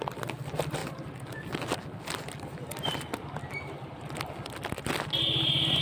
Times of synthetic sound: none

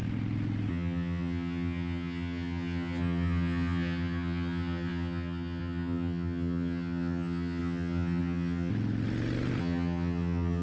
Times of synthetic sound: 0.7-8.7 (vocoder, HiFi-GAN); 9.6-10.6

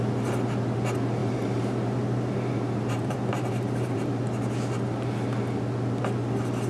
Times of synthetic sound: 1.2-4.2 (vocoder, BigVGAN v2)

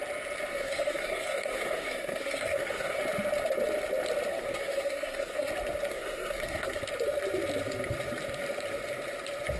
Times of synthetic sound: 0.5-3.0 (codec, SNAC); 4.3-5.5; 5.9-6.8

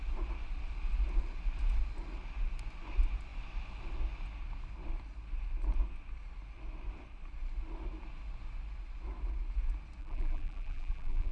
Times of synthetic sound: 10.0-11.3 (vocoder, BigVGAN v2)

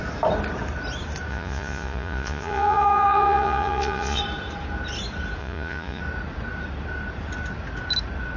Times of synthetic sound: 1.3-4.2 (vocoder, Vocos); 5.4-6.0